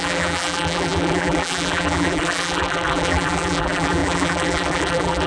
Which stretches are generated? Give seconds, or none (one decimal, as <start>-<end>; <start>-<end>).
0.0-5.3

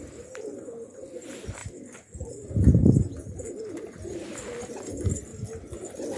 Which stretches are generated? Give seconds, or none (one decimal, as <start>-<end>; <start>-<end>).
0.0-1.6; 2.8-5.3

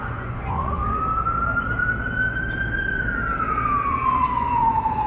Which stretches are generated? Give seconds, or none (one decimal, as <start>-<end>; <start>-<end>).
0.0-0.8; 3.9-5.1

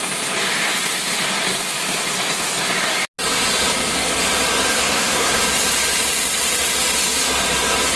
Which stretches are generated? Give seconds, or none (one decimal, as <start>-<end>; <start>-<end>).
4.7-5.4

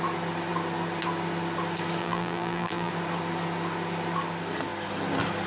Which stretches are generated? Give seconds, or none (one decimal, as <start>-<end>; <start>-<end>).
2.0-2.9

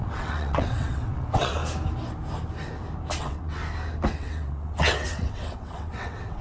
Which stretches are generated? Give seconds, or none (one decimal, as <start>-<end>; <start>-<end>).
0.0-1.6; 3.2-3.6; 4.1-6.4

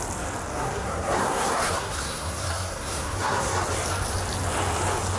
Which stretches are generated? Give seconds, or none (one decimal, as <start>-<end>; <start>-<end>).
0.5-3.6